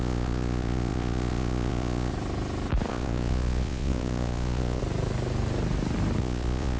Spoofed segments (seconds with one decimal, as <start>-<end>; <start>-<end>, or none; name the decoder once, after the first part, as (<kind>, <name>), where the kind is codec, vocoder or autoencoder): 0.0-2.1 (vocoder, Vocos); 2.9-4.8; 6.2-6.8